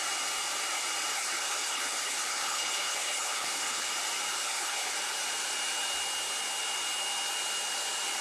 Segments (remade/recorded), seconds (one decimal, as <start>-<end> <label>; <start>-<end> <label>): 0.0-1.1 recorded; 1.1-3.9 remade; 3.9-4.3 recorded; 4.3-4.9 remade; 4.9-8.2 recorded